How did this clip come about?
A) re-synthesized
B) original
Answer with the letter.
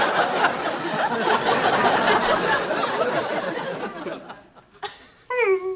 B